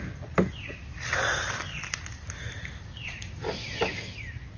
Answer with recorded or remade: recorded